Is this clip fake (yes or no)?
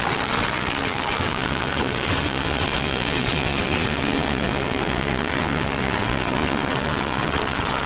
yes